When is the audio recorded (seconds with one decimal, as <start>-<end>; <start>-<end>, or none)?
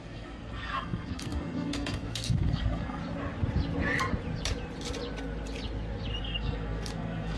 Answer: 3.0-6.2